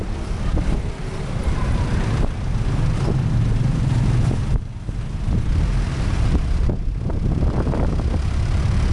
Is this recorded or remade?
remade